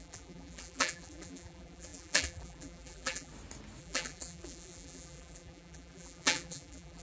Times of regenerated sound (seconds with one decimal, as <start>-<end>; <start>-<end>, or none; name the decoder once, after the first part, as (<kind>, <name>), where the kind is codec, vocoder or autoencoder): 0.0-3.3 (vocoder, BigVGAN v2); 3.8-7.0